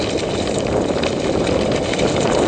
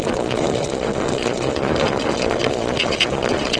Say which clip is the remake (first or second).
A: second